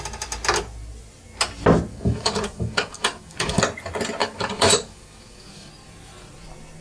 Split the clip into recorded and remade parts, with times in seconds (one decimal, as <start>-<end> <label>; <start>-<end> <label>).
0.0-1.9 recorded; 1.9-3.6 remade; 3.6-4.2 recorded; 4.2-5.7 remade; 5.7-6.8 recorded

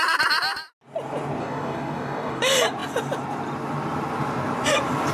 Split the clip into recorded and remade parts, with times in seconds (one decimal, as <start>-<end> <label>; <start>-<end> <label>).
0.0-1.4 recorded; 1.4-2.4 remade; 2.4-5.1 recorded

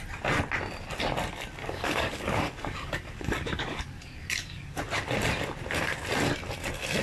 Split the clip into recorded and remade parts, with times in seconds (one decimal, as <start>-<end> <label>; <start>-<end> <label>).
0.0-1.6 recorded; 1.6-4.8 remade; 4.8-7.0 recorded

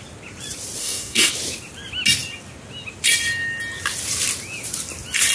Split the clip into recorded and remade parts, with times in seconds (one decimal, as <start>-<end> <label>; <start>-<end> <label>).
0.0-0.8 recorded; 0.8-1.3 remade; 1.3-5.3 recorded